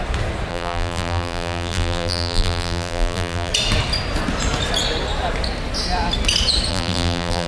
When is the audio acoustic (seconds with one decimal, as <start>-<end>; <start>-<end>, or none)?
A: 0.0-0.5; 3.5-6.7